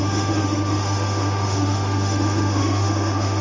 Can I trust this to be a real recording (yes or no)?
no